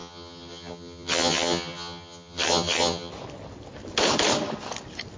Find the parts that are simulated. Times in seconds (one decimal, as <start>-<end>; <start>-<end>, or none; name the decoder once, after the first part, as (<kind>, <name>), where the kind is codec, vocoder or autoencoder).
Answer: 0.0-3.1 (vocoder, HiFi-GAN)